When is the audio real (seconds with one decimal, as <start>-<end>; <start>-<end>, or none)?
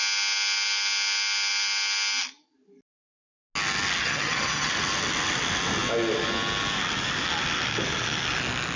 0.0-4.0; 4.7-8.8